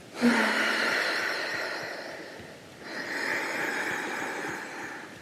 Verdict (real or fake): real